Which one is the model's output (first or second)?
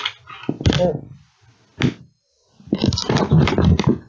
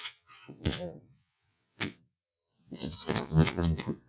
second